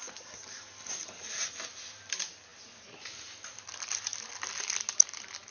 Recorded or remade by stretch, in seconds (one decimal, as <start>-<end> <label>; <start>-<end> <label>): 0.0-5.5 recorded